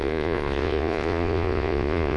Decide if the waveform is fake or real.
fake